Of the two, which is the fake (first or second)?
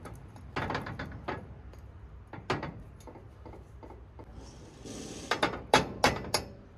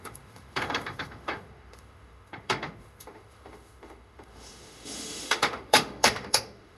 second